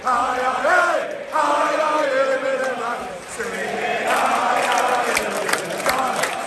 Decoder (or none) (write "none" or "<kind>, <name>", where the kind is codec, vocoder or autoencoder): none